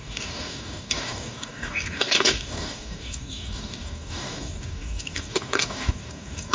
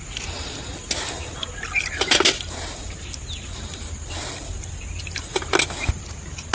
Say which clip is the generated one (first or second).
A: first